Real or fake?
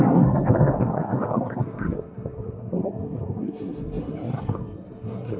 fake